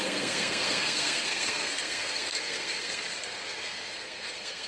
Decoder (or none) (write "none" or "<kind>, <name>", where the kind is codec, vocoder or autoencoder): codec, SNAC